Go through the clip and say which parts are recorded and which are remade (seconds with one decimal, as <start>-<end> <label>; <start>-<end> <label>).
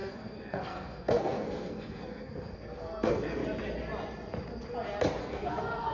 0.0-3.4 remade; 3.4-5.2 recorded; 5.2-5.9 remade